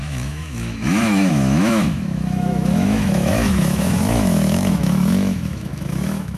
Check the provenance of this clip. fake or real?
fake